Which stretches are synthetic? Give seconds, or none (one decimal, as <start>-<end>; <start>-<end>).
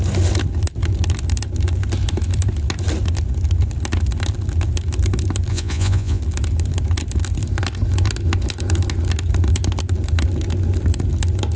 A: 5.5-6.2